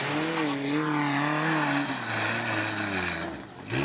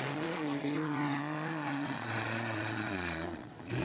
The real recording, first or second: first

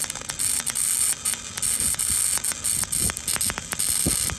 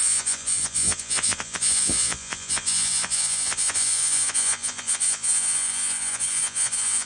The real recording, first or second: first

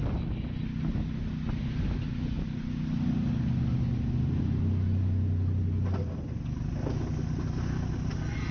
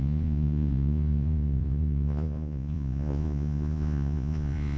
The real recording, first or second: first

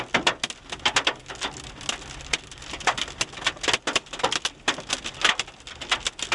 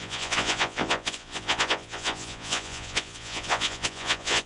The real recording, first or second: first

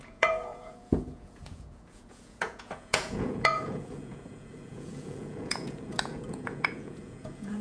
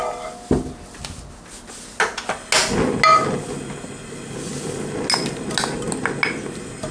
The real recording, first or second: second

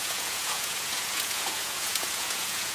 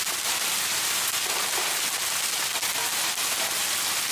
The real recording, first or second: second